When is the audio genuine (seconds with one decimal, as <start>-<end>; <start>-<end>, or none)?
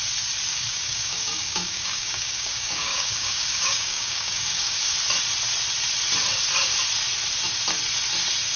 0.0-0.5; 4.9-8.6